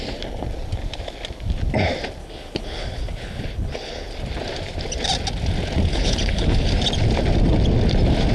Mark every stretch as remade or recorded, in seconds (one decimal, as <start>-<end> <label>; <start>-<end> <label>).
0.0-2.2 recorded; 2.2-4.1 remade; 4.1-5.9 recorded; 5.9-6.7 remade; 6.7-8.3 recorded